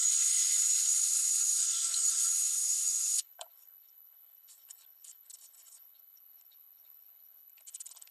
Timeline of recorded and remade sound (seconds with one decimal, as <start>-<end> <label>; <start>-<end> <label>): 0.0-8.1 remade